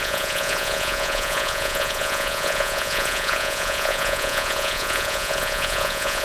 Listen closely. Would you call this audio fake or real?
fake